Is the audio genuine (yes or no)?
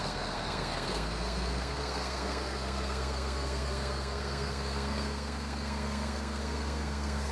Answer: no